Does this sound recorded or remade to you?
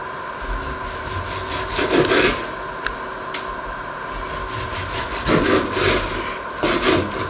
recorded